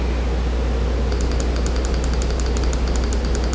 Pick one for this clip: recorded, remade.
recorded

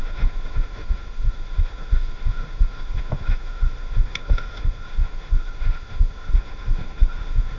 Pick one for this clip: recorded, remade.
remade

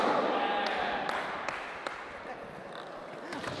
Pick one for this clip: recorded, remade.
remade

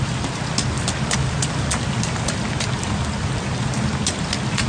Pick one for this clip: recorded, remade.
recorded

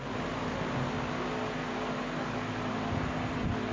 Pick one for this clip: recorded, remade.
recorded